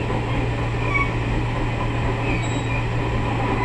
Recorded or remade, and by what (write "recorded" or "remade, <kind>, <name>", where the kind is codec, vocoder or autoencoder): recorded